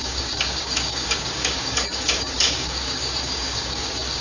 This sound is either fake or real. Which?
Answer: fake